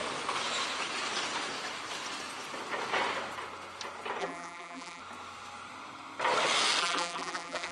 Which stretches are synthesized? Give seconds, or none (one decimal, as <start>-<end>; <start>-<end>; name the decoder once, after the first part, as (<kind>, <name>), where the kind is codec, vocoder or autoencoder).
4.2-5.0 (vocoder, BigVGAN v2); 6.8-7.7